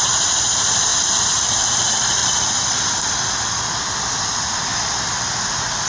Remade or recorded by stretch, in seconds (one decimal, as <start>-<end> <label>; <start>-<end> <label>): 0.0-0.9 remade; 0.9-1.7 recorded; 1.7-2.2 remade; 2.2-4.1 recorded; 4.1-4.7 remade; 4.7-5.9 recorded